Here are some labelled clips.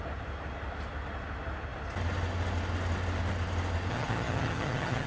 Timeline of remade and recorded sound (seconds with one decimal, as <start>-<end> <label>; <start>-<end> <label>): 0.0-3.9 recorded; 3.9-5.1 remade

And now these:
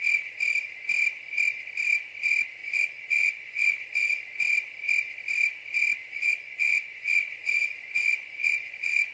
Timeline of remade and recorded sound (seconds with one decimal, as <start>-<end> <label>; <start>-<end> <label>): 0.0-2.6 recorded; 2.6-4.2 remade; 4.2-6.0 recorded; 6.0-9.1 remade

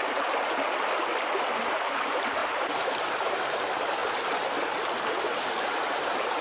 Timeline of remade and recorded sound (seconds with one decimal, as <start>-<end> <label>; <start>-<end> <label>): 0.0-1.5 recorded; 1.5-4.0 remade; 4.0-5.7 recorded; 5.7-6.4 remade